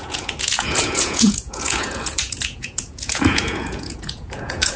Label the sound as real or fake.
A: fake